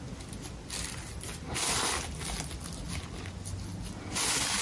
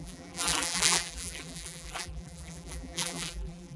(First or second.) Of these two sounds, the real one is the first